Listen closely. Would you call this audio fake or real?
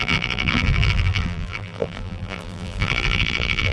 fake